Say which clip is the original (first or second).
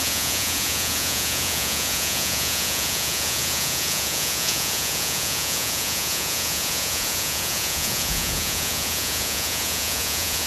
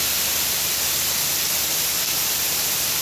second